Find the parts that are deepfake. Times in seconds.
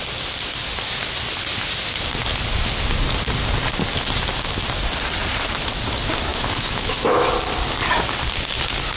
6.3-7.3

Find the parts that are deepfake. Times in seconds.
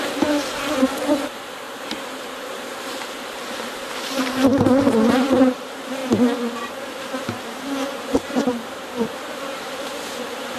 0.0-4.5; 5.1-6.0; 7.0-10.6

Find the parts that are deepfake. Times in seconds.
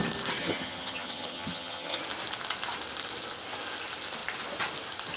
0.4-2.0